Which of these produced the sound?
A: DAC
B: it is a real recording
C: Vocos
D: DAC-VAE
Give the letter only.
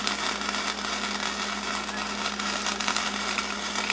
B